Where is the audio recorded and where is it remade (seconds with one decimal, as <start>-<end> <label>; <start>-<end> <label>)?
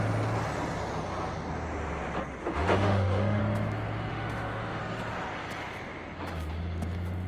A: 0.0-2.4 recorded; 2.4-3.4 remade; 3.4-4.1 recorded; 4.1-4.8 remade; 4.8-7.3 recorded